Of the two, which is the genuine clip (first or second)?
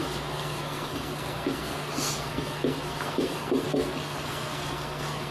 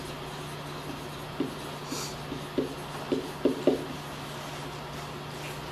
second